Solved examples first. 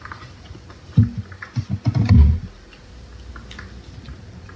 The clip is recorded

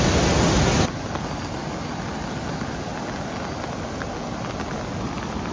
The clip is recorded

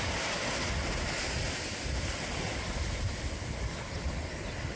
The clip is recorded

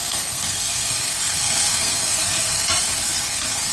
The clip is remade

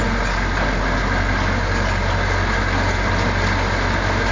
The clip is recorded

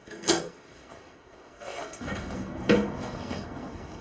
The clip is remade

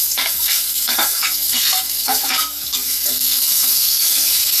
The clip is remade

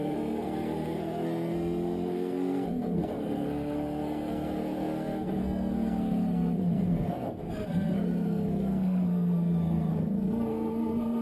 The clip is remade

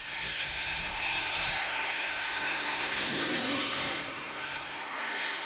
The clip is remade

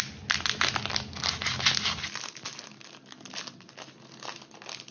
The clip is recorded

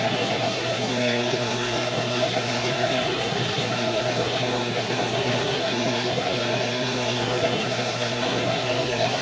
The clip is remade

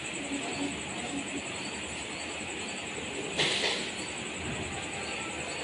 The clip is recorded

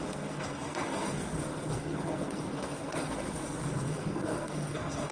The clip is remade